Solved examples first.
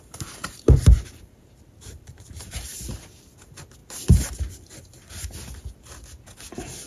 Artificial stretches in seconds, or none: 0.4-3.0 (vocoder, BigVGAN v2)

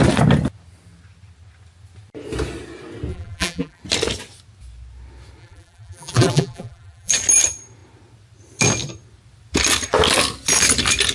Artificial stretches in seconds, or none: 3.1-3.8 (vocoder, BigVGAN v2); 5.4-7.1

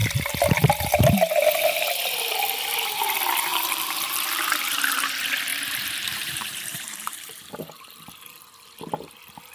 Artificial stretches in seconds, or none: 3.5-5.1 (vocoder, BigVGAN v2); 5.5-7.6